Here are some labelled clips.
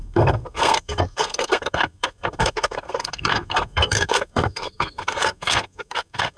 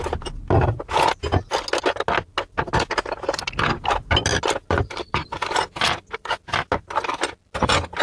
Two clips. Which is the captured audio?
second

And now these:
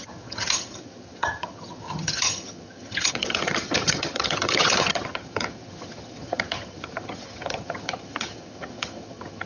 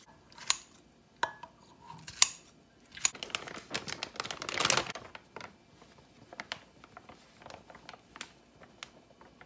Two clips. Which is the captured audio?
second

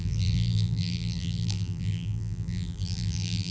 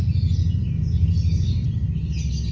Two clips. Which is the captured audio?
second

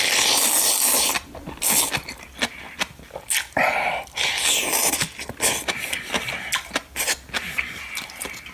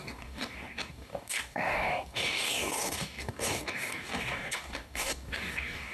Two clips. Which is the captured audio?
first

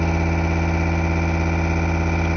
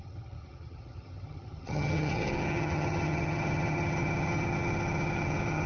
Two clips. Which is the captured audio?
first